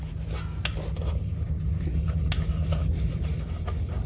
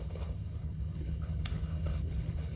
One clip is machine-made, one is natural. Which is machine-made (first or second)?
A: second